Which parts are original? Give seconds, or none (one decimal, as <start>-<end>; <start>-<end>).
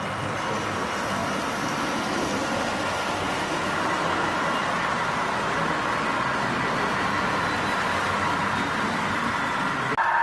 0.0-1.2; 3.9-10.2